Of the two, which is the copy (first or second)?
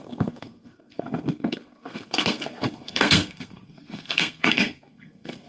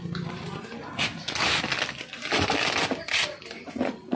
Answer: first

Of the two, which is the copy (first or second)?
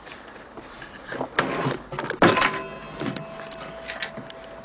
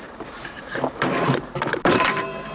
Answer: second